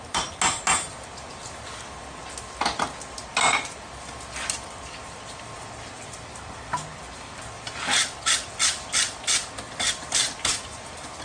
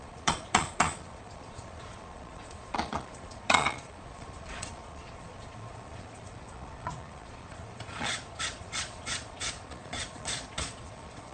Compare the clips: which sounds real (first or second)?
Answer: first